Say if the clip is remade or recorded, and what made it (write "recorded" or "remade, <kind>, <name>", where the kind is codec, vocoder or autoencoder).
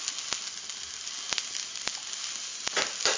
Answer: recorded